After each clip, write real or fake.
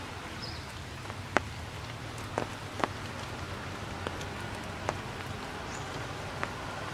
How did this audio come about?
real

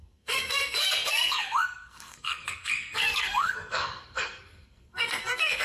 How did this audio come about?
fake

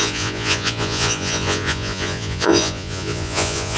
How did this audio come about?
fake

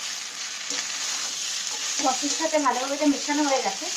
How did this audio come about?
real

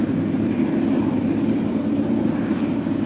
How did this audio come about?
fake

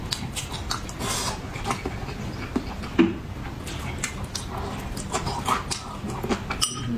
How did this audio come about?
real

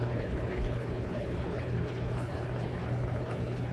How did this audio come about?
fake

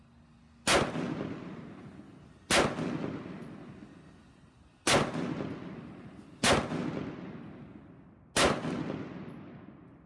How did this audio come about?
real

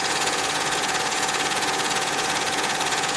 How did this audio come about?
fake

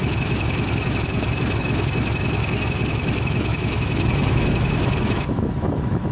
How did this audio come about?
fake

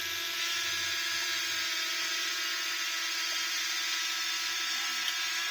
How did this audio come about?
real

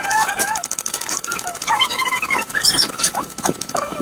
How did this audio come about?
fake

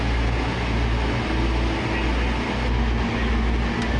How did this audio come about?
real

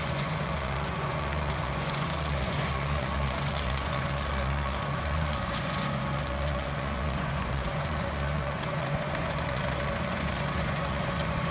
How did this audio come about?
fake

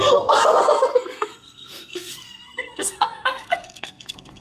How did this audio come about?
fake